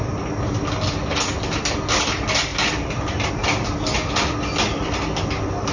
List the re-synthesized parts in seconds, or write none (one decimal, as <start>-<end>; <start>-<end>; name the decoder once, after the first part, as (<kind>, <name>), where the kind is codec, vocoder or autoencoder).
none